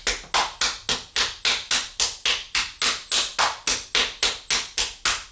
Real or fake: real